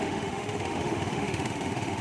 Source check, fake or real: fake